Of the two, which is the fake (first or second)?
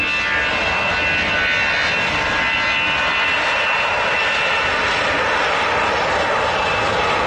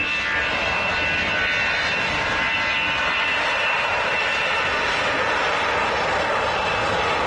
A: second